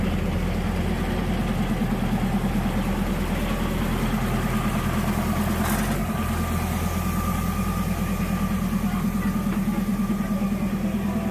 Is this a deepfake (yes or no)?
no